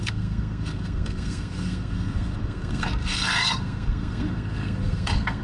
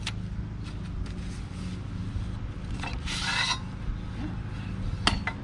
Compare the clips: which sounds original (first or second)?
second